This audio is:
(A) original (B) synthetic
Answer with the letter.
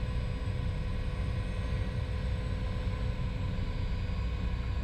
A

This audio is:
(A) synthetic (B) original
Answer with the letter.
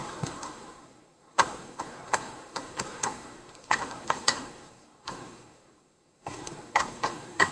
A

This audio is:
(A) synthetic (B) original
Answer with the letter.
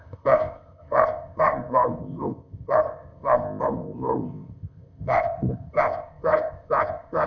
A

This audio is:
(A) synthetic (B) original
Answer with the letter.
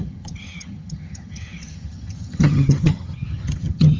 A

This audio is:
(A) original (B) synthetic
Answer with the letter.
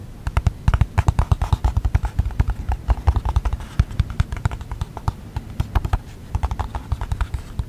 A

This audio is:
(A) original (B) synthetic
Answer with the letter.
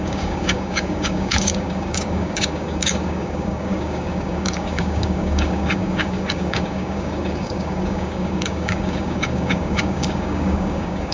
B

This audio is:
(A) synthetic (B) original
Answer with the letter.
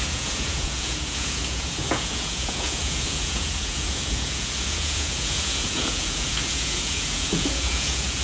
A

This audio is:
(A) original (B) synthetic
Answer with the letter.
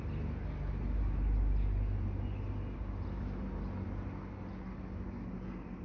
A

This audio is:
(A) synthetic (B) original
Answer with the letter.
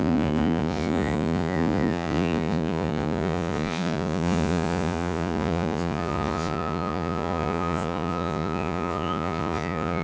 A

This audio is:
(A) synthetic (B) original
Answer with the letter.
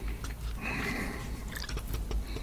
B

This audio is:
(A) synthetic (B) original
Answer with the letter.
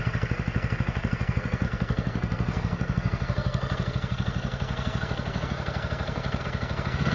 A